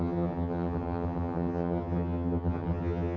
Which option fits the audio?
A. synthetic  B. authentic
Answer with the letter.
A